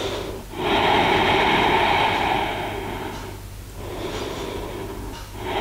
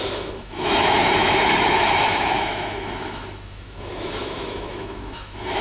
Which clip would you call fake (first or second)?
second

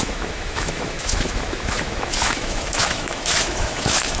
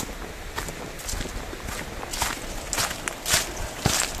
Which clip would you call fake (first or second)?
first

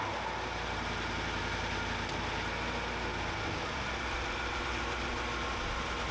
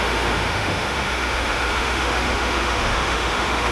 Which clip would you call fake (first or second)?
second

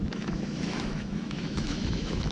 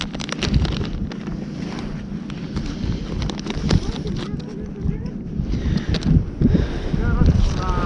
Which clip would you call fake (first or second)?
first